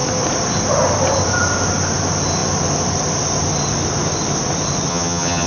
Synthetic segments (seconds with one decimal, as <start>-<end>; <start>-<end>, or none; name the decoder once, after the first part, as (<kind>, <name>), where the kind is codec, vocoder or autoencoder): 4.9-5.5 (vocoder, HiFi-GAN)

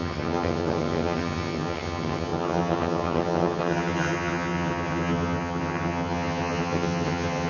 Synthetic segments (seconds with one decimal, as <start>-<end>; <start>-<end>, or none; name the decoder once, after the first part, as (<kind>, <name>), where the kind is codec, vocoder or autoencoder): 0.0-7.5 (vocoder, HiFi-GAN)

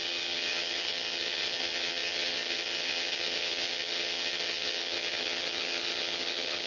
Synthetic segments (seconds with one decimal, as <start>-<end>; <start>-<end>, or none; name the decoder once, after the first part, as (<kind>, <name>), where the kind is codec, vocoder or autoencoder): 0.0-6.7 (vocoder, HiFi-GAN)